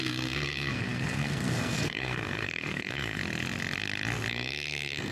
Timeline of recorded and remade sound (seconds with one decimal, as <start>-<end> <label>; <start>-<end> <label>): 0.0-3.2 remade; 3.2-4.3 recorded; 4.3-5.1 remade